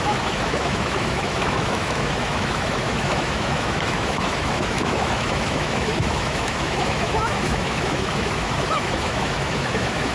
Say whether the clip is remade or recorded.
remade